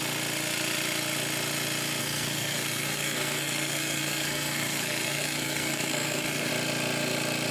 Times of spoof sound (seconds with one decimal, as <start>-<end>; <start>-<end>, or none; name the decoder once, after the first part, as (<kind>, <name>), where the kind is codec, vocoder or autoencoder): 2.0-6.5 (codec, SNAC)